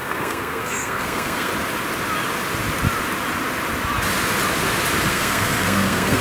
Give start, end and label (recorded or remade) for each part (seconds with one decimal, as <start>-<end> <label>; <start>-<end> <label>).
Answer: 0.0-1.5 remade; 1.5-5.1 recorded; 5.1-6.2 remade